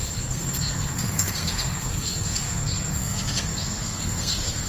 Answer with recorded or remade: remade